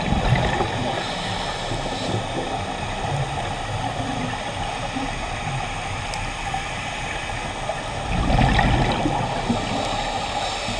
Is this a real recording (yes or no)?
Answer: yes